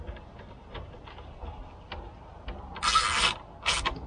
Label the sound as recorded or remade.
recorded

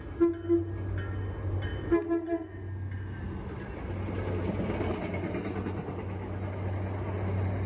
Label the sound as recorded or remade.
recorded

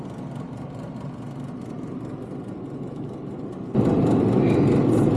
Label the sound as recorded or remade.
recorded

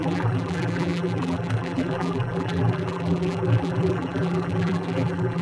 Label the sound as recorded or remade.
remade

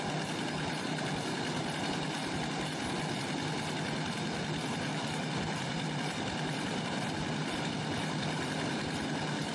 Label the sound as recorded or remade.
recorded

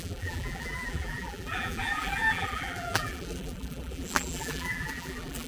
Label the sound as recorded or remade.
remade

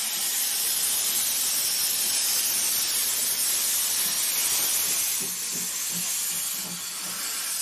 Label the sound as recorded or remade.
recorded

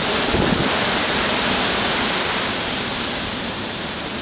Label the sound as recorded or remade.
recorded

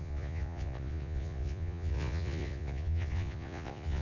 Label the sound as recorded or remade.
remade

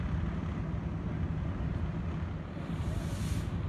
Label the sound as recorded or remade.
recorded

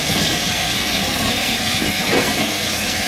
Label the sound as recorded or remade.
remade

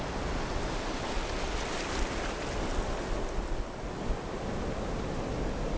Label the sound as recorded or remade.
recorded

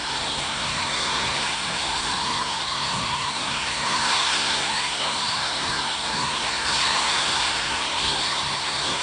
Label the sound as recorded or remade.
remade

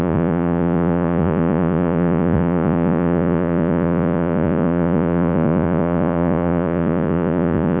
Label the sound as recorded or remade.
remade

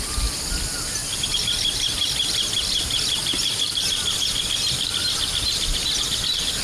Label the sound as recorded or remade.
recorded